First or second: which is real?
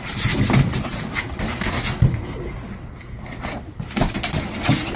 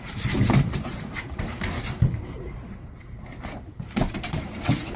first